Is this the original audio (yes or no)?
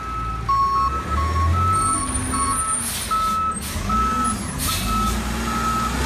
yes